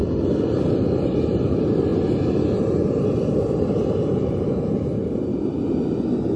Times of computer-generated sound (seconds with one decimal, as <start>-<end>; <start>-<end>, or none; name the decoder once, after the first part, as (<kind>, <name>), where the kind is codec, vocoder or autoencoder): none

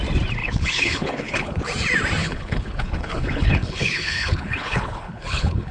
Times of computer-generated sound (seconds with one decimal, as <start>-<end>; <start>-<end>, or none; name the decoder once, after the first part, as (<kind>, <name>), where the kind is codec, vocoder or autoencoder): 0.4-1.6 (codec, HILCodec); 2.2-5.7

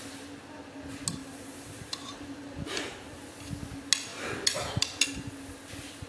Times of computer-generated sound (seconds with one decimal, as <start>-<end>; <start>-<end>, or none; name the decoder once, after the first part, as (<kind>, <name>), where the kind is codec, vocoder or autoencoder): 1.2-3.2 (vocoder, BigVGAN v2)

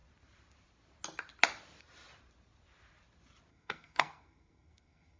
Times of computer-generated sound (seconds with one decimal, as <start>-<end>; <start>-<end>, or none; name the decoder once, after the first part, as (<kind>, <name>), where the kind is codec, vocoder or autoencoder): 3.5-5.2 (codec, SNAC)

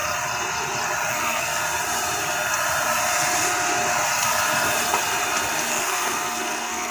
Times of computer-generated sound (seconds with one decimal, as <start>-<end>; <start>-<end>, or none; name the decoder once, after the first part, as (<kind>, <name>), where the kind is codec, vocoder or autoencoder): 1.1-1.6 (codec, SNAC); 5.7-6.9